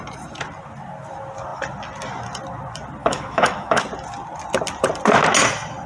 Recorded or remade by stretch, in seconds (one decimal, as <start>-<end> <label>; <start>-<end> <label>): 0.0-3.0 recorded; 3.0-3.8 remade; 3.8-5.9 recorded